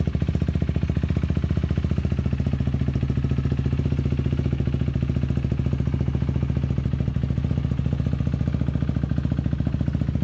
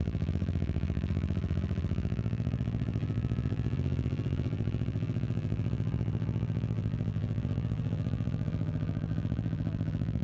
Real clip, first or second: first